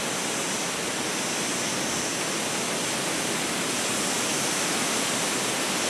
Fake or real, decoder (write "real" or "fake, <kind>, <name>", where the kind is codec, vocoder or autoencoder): real